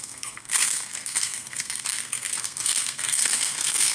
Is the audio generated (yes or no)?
yes